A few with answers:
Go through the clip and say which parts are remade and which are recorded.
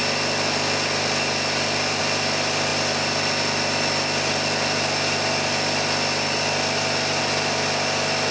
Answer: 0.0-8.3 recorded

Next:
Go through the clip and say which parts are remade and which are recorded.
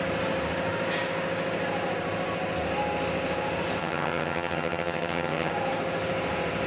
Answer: 0.0-3.8 recorded; 3.8-5.5 remade; 5.5-6.7 recorded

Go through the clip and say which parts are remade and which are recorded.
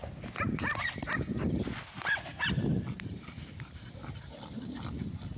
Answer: 0.0-5.4 recorded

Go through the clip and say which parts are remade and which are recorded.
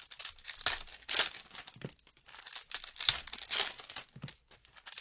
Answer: 0.0-5.0 recorded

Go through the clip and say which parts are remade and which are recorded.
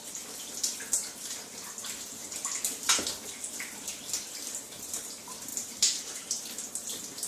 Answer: 0.0-7.3 recorded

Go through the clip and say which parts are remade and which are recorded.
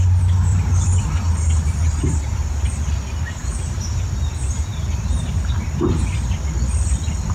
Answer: 0.0-0.5 recorded; 0.5-1.1 remade; 1.1-7.3 recorded